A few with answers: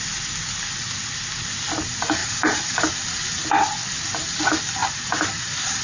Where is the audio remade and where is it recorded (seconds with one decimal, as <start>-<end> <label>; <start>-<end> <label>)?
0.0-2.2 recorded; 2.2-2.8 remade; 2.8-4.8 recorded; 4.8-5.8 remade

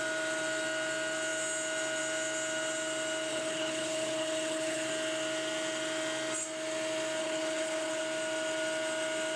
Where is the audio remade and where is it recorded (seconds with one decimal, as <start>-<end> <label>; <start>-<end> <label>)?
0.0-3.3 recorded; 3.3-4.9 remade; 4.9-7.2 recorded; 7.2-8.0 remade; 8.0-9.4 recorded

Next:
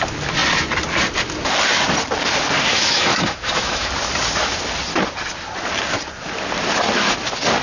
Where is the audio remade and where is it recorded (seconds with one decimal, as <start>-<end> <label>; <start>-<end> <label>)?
0.0-2.7 recorded; 2.7-3.9 remade; 3.9-7.6 recorded

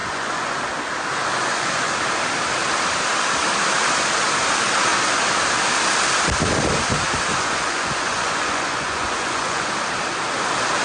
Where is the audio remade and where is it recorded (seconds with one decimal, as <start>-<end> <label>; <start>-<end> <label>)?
0.0-0.6 remade; 0.6-1.3 recorded; 1.3-1.9 remade; 1.9-7.3 recorded; 7.3-9.7 remade; 9.7-10.8 recorded

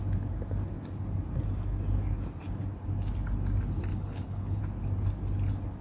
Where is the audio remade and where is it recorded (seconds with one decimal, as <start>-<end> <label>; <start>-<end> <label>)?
0.0-3.9 recorded; 3.9-4.6 remade; 4.6-5.8 recorded

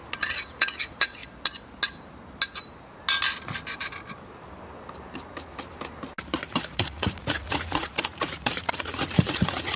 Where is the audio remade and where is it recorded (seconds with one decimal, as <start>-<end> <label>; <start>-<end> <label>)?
0.0-1.2 remade; 1.2-6.5 recorded; 6.5-9.8 remade

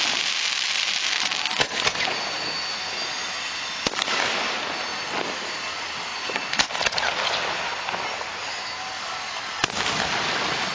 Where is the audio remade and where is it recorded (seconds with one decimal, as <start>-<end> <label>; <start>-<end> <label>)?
0.0-10.7 recorded